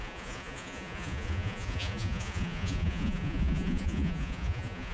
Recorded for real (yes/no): no